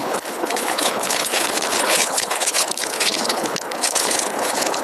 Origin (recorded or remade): remade